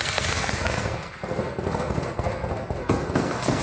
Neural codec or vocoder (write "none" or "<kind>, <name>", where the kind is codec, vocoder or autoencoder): codec, SNAC